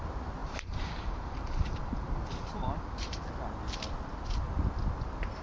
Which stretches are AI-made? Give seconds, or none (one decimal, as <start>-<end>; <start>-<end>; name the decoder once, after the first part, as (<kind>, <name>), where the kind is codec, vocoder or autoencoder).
0.4-3.2 (vocoder, BigVGAN v2)